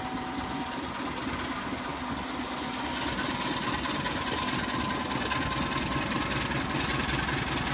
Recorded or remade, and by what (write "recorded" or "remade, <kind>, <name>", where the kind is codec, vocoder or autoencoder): recorded